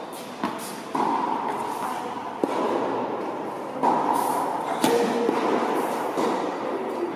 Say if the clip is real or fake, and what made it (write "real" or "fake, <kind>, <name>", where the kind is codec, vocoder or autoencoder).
real